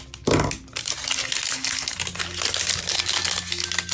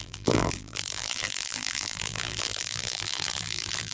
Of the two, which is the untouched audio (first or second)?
first